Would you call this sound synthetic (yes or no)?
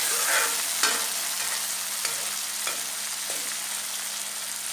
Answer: no